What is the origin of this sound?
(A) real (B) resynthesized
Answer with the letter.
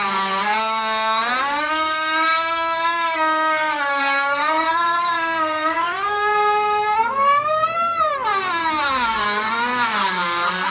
B